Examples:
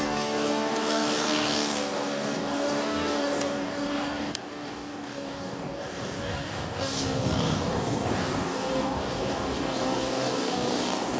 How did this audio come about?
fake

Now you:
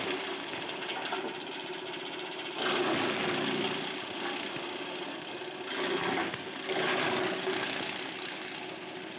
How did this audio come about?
real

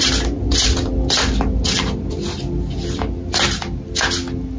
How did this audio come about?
real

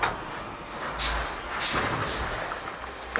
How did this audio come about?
real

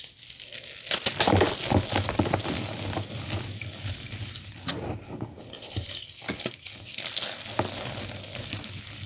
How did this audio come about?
real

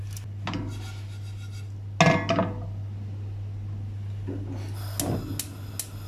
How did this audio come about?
real